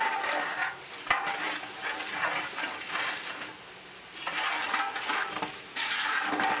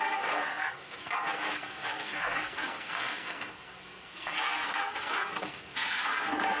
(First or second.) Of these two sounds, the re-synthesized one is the second